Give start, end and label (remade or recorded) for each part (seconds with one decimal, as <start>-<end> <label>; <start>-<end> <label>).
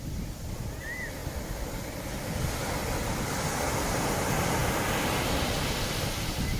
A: 0.0-6.6 recorded